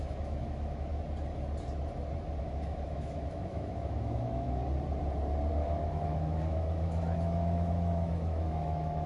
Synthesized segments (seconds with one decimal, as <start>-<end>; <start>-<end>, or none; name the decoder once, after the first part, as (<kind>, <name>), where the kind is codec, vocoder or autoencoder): 0.0-0.9 (autoencoder, DAC-VAE); 2.4-4.6; 5.5-9.1